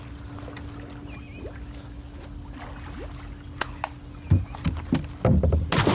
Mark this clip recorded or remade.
recorded